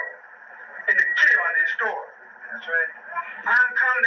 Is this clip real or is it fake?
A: real